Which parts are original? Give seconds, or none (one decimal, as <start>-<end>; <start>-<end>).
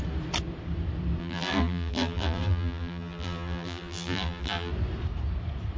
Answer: 0.0-1.2; 4.7-5.8